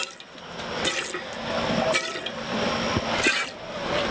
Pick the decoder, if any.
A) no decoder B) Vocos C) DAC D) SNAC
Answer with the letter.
A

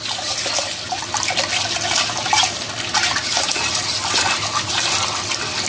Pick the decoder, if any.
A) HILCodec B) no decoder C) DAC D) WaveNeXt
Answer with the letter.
B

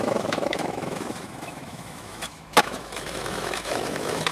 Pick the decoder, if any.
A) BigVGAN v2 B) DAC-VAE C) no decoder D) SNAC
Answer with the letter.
B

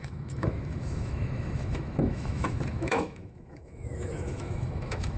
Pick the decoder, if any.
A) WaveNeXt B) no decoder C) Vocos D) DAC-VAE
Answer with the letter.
D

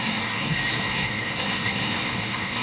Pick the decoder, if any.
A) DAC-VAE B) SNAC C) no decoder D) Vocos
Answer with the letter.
B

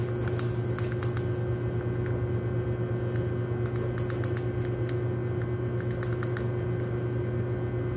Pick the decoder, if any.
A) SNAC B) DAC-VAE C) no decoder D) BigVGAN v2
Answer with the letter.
C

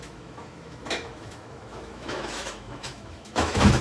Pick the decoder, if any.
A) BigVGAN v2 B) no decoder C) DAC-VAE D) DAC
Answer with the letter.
C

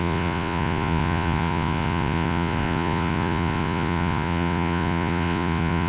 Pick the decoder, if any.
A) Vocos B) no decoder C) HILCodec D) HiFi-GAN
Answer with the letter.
A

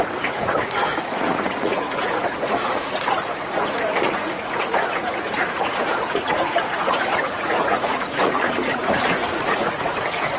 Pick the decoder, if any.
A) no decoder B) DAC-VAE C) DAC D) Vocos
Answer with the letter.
D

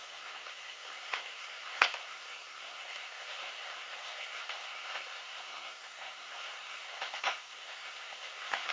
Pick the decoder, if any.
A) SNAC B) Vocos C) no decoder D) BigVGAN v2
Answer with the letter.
A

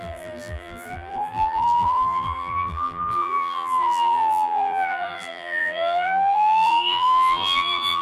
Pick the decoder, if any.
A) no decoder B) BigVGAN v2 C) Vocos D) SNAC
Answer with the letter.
B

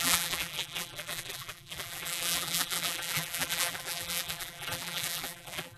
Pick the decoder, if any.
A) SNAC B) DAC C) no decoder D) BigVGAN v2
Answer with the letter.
D